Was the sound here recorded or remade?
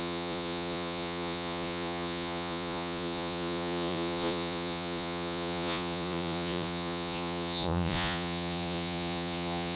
remade